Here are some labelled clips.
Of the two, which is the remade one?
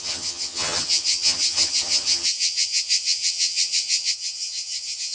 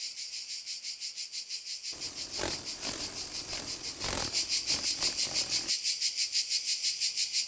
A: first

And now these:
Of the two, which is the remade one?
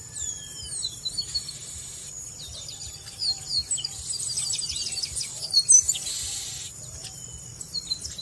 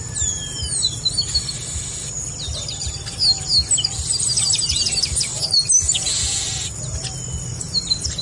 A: first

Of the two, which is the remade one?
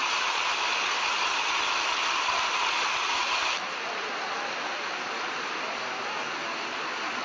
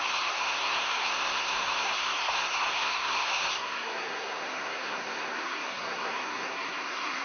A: second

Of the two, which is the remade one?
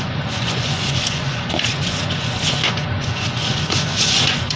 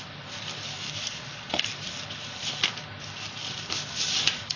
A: first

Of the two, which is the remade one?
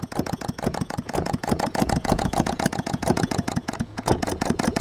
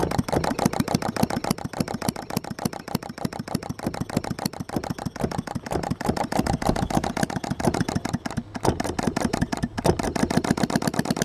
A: first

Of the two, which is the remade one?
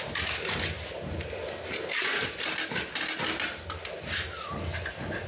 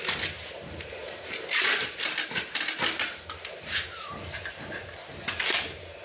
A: second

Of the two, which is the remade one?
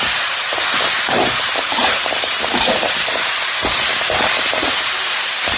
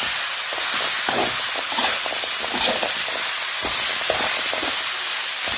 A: first